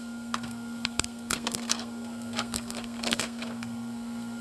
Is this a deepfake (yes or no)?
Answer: yes